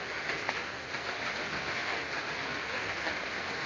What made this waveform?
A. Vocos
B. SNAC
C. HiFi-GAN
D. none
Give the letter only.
B